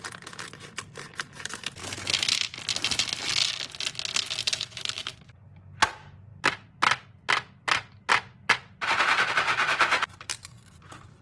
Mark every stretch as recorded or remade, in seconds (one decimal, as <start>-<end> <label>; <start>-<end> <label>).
0.0-1.8 recorded; 1.8-2.6 remade; 2.6-4.4 recorded; 4.4-5.3 remade; 5.3-11.2 recorded